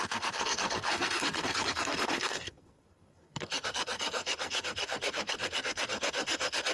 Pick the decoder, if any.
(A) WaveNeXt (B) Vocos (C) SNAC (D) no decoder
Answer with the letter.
C